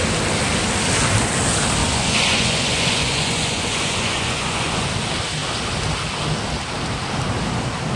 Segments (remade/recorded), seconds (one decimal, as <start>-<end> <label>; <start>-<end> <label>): 0.0-1.8 recorded; 1.8-4.9 remade; 4.9-8.0 recorded